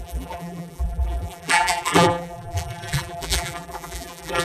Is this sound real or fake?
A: fake